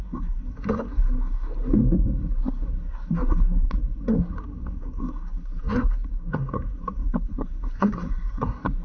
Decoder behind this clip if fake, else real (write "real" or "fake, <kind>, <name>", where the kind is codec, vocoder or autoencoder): fake, codec, SNAC